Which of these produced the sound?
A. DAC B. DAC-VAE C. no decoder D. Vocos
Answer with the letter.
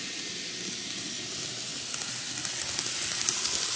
C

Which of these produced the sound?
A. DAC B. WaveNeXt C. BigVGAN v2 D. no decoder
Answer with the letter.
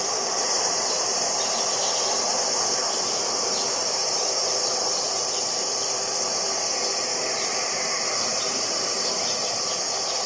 D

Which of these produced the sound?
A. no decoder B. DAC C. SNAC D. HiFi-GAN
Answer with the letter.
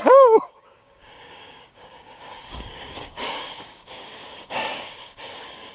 B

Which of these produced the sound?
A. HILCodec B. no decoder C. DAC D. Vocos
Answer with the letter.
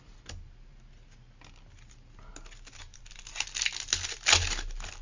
B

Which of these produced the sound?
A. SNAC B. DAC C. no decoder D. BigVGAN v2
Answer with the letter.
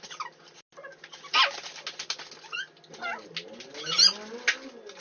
C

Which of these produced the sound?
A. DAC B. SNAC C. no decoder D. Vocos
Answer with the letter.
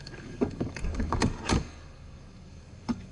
A